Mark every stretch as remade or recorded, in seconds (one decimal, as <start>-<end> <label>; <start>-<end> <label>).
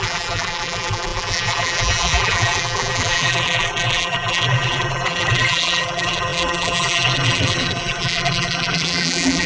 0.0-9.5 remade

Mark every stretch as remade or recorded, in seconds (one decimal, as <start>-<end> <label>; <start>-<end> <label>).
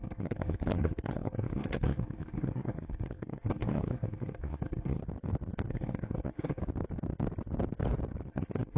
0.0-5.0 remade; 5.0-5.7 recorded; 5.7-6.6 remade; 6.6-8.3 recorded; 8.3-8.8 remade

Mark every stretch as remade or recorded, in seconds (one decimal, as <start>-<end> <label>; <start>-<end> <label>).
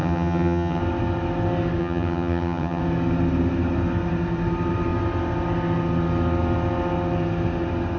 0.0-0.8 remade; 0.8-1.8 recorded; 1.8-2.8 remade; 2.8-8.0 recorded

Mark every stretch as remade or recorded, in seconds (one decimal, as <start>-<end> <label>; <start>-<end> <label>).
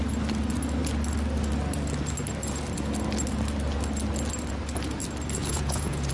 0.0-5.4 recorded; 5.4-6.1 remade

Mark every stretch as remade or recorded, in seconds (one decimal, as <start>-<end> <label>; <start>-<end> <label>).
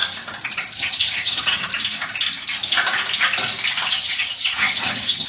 0.0-0.8 recorded; 0.8-1.7 remade; 1.7-3.9 recorded; 3.9-5.3 remade